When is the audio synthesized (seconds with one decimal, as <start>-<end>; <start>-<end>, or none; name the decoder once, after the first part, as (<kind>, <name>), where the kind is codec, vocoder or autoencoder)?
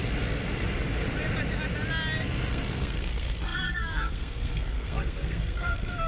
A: 2.5-6.1 (codec, SNAC)